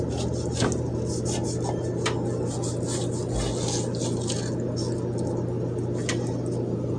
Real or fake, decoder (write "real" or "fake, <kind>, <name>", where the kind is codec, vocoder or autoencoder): real